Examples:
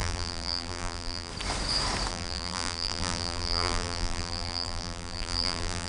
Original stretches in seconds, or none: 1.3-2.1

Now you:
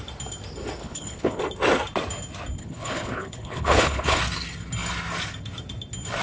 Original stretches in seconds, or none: 0.0-0.8; 1.4-2.6; 4.2-6.2

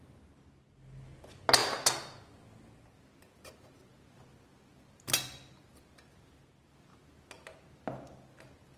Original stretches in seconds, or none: 0.0-8.8

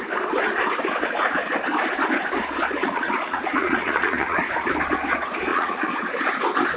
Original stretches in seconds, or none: 0.0-2.8; 4.7-5.5; 6.1-6.8

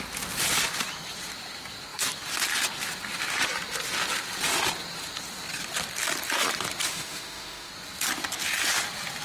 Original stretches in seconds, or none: 0.0-6.9; 7.7-9.2